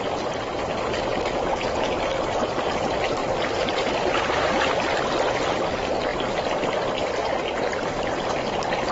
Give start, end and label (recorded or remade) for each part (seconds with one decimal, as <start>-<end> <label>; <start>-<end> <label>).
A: 0.0-3.2 recorded; 3.2-3.7 remade; 3.7-8.9 recorded